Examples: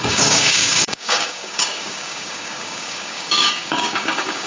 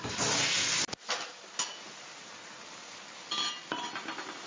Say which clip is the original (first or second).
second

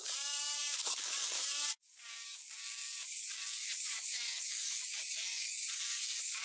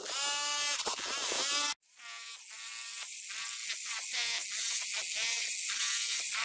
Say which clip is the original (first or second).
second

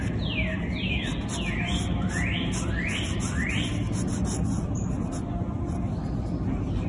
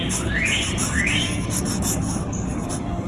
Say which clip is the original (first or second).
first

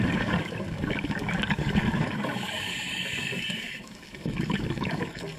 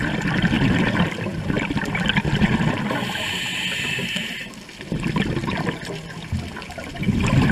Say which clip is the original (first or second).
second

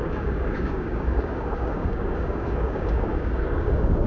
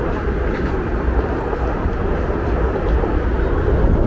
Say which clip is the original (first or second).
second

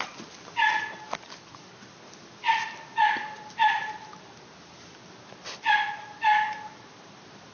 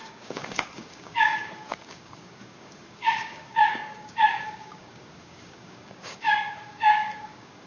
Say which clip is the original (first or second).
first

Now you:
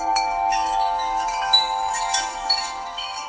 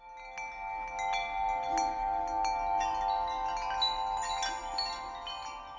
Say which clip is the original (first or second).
second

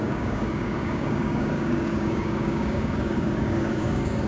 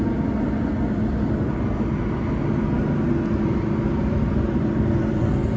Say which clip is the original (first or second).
second